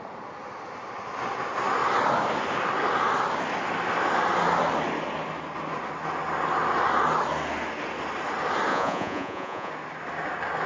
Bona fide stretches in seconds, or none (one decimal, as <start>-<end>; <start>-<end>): 0.0-8.7; 9.7-10.7